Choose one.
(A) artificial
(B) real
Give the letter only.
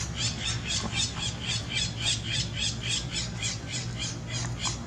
B